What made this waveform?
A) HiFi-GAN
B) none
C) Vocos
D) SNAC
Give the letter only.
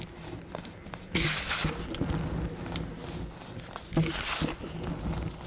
B